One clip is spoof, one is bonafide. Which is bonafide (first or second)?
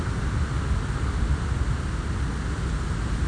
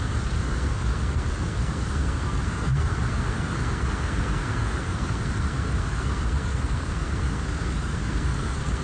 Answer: first